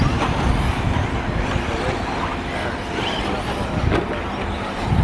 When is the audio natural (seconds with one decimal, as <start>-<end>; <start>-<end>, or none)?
0.0-5.0